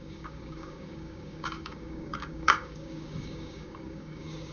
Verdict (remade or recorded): remade